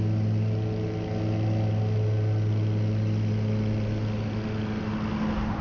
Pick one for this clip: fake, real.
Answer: real